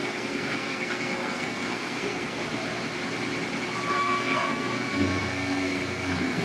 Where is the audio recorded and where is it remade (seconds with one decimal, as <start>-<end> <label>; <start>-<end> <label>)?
0.0-2.4 remade; 2.4-3.9 recorded; 3.9-6.4 remade